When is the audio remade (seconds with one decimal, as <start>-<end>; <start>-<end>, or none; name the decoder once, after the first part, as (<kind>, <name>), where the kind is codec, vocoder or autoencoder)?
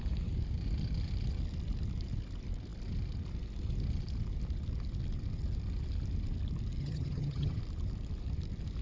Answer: 6.8-7.6 (vocoder, HiFi-GAN)